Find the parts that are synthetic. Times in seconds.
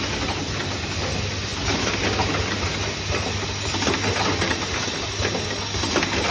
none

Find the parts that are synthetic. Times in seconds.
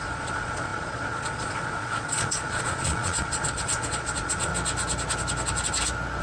0.0-4.5 (vocoder, Vocos)